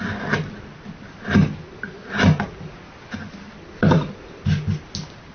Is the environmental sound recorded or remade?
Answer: recorded